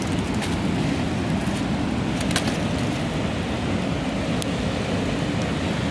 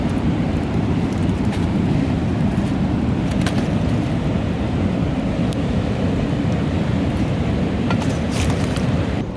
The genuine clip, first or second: first